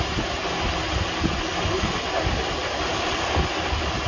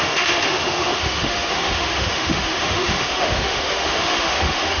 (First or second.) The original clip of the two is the first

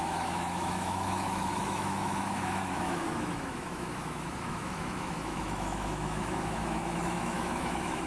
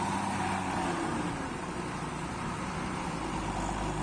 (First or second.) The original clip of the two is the second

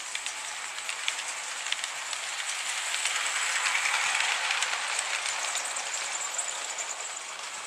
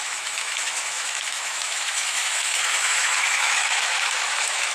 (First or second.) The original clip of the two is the first